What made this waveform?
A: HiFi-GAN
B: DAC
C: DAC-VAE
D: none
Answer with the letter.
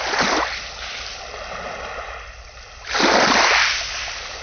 D